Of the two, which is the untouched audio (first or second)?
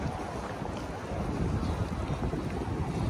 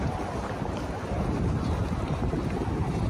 first